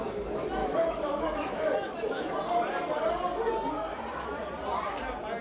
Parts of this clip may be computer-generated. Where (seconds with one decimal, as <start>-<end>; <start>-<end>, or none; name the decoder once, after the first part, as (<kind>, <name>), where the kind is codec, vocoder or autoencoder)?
0.6-2.3 (autoencoder, DAC-VAE)